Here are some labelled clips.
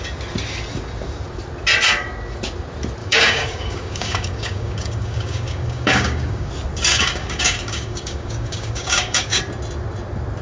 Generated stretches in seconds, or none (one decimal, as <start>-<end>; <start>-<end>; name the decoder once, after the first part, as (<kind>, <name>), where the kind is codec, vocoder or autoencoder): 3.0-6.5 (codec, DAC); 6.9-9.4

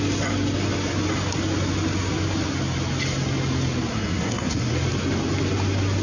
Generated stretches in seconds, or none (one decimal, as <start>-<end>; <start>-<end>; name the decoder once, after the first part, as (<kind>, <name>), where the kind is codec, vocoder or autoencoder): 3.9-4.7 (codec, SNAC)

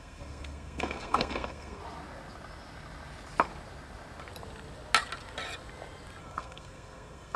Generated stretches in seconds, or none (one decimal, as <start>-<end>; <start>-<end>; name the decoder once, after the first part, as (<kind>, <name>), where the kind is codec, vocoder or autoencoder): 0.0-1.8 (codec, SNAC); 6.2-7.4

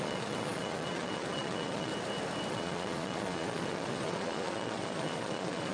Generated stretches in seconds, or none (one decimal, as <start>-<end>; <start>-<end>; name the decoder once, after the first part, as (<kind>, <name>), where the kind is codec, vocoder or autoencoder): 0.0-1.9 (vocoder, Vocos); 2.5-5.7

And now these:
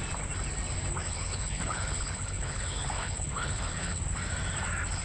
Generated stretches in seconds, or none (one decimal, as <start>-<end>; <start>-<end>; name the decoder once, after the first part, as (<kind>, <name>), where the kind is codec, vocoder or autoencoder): 1.0-4.0 (codec, HILCodec)

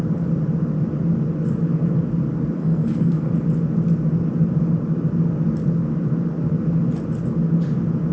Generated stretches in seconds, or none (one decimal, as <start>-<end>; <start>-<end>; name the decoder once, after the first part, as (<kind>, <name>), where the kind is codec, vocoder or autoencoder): 2.6-3.3 (codec, SNAC)

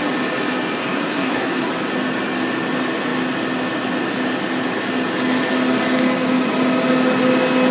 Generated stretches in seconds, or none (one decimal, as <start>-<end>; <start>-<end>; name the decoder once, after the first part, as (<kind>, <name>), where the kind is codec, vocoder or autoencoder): 0.8-1.7 (codec, SNAC)

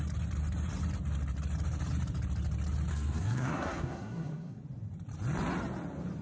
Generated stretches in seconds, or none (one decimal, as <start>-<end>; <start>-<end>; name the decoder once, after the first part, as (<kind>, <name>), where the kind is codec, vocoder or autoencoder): 2.9-4.6 (codec, SNAC)